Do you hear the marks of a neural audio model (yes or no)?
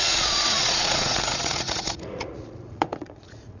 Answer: yes